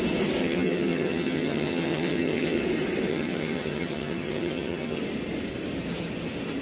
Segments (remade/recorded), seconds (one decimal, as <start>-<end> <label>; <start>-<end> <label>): 0.0-0.4 recorded; 0.4-2.6 remade; 2.6-3.1 recorded; 3.1-5.0 remade; 5.0-6.6 recorded